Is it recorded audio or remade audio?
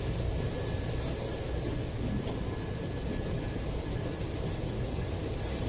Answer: recorded